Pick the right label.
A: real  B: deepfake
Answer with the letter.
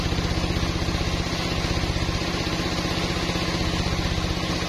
A